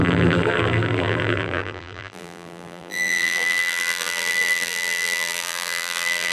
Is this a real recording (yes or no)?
no